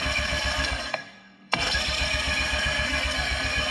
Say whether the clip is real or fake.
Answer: fake